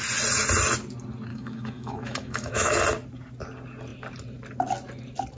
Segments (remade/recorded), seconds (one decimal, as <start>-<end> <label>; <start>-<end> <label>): 0.0-1.3 recorded; 1.3-2.8 remade; 2.8-5.4 recorded